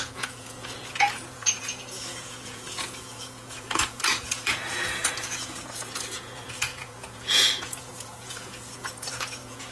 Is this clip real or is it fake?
fake